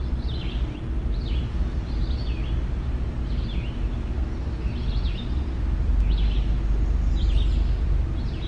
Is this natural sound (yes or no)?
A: yes